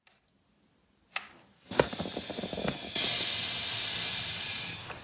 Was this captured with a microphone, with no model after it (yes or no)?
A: yes